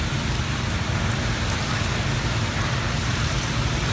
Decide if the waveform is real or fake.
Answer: fake